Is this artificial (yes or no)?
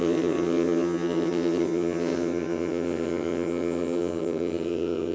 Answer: yes